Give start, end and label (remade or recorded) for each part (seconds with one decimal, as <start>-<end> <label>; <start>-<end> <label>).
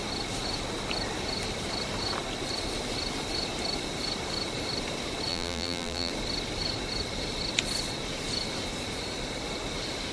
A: 0.0-5.3 recorded; 5.3-6.1 remade; 6.1-10.1 recorded